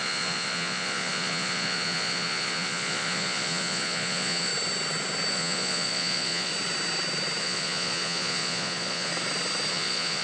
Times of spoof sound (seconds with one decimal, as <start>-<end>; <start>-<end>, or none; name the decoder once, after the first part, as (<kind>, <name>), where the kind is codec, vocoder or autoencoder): 0.0-4.5 (vocoder, Vocos); 5.3-6.5; 7.4-9.1; 9.7-10.2

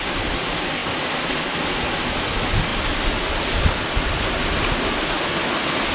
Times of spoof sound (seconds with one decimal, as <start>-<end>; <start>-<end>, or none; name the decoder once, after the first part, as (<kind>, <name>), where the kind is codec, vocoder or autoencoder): none